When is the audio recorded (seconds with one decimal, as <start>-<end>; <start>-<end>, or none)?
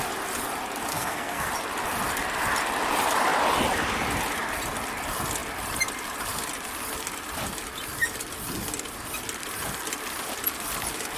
0.0-0.9; 1.5-11.2